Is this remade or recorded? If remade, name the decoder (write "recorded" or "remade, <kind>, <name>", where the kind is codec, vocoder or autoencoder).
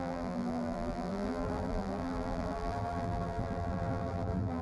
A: remade, vocoder, BigVGAN v2